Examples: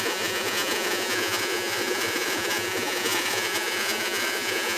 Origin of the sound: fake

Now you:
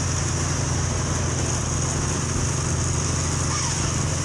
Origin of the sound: real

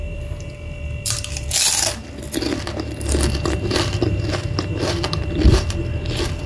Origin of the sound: fake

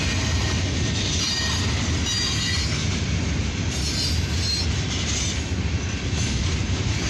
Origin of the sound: real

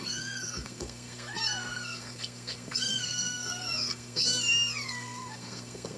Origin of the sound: fake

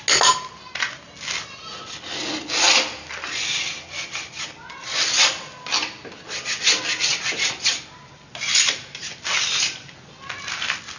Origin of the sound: real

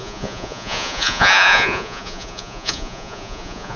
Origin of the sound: fake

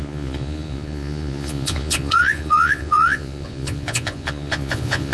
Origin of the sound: fake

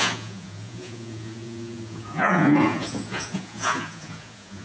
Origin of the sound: fake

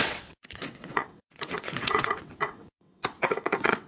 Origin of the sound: fake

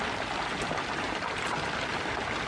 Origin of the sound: real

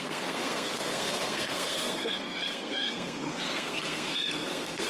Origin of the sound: fake